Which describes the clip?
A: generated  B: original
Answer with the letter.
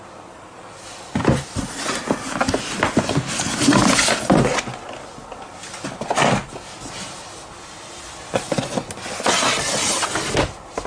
B